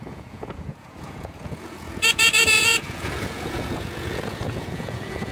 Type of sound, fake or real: fake